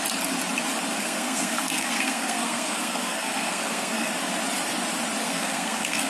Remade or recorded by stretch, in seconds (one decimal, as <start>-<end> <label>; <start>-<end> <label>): 0.0-0.9 recorded; 0.9-4.1 remade; 4.1-5.2 recorded; 5.2-6.1 remade